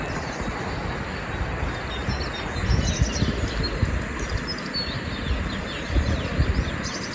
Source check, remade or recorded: recorded